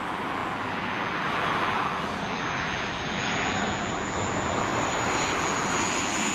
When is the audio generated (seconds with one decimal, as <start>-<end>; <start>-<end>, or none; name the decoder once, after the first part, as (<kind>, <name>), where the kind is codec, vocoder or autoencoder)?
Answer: 0.0-4.7 (vocoder, BigVGAN v2); 5.4-6.3